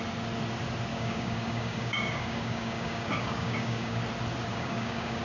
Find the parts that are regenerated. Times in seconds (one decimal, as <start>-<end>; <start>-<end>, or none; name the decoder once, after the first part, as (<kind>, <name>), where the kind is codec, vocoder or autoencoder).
0.9-4.0 (codec, DAC); 4.5-5.2